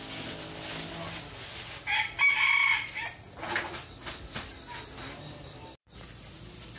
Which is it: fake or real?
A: real